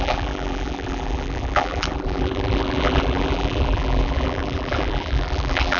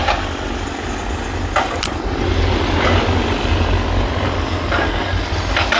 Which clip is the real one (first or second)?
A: second